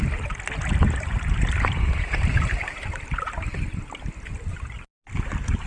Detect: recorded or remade recorded